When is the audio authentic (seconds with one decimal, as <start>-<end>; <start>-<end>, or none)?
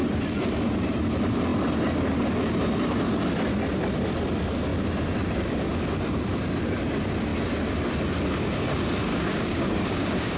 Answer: 0.0-9.1